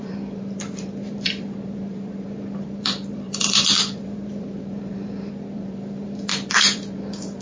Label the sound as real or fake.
fake